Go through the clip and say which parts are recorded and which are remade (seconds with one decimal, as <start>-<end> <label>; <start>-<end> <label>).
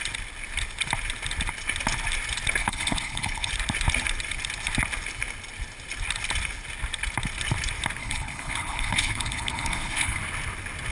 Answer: 0.0-2.6 recorded; 2.6-3.5 remade; 3.5-8.0 recorded; 8.0-10.2 remade; 10.2-10.9 recorded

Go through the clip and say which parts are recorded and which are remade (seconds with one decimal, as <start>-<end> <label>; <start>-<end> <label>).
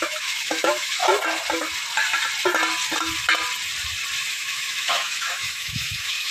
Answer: 0.0-1.0 remade; 1.0-4.3 recorded; 4.3-6.3 remade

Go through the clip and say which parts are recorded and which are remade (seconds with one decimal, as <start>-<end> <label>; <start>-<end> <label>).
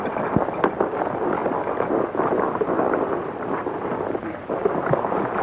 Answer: 0.0-5.4 recorded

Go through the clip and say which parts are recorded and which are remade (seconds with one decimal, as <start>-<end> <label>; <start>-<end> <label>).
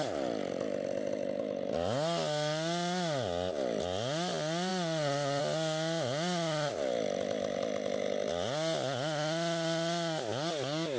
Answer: 0.0-11.0 recorded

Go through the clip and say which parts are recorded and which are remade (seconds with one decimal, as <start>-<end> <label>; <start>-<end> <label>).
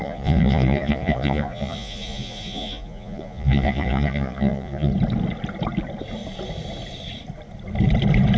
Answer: 0.0-4.9 remade; 4.9-8.4 recorded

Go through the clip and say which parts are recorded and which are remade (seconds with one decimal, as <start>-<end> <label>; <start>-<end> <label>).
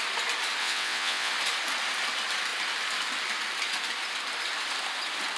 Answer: 0.0-0.6 recorded; 0.6-1.3 remade; 1.3-5.4 recorded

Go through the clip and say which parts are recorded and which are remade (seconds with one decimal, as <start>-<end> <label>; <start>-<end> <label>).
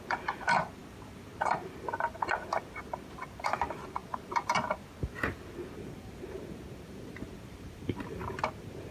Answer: 0.0-8.9 remade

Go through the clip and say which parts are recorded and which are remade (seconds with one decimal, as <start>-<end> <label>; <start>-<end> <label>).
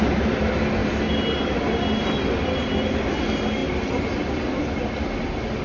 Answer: 0.0-5.6 recorded